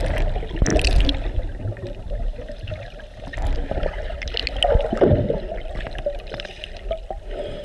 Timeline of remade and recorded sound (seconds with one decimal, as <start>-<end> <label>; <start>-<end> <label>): 0.0-7.6 recorded